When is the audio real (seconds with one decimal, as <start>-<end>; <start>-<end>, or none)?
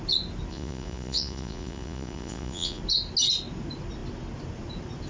0.0-0.5; 2.8-5.1